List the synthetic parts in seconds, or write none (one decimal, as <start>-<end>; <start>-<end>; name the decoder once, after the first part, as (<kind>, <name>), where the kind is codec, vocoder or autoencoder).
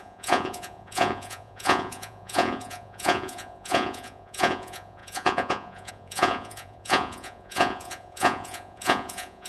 0.0-9.5 (vocoder, Vocos)